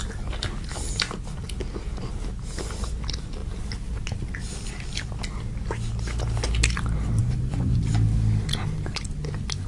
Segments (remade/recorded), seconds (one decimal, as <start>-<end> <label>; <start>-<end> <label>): 0.0-7.2 recorded; 7.2-7.8 remade; 7.8-9.7 recorded

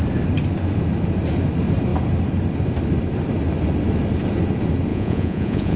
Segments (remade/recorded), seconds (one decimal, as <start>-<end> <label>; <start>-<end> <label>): 0.0-4.9 recorded; 4.9-5.8 remade